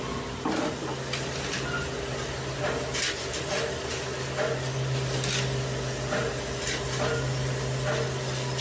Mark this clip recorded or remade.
recorded